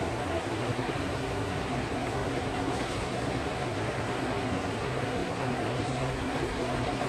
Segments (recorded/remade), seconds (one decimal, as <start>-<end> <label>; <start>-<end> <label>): 0.0-7.1 remade